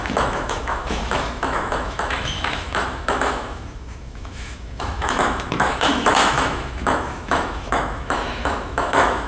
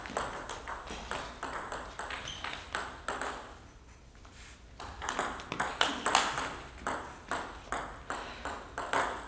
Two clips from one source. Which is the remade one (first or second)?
first